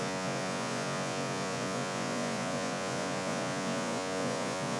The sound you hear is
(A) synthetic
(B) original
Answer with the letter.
A